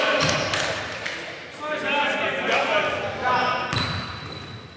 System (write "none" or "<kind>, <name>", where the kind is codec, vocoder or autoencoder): none